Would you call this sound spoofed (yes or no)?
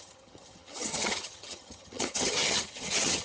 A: yes